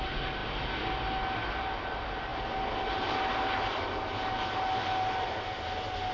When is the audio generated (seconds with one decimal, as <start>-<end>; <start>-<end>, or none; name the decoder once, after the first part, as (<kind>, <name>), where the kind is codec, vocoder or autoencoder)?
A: none